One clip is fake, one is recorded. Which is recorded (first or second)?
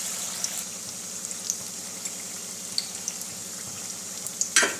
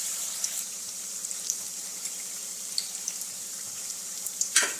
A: first